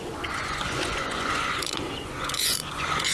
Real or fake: fake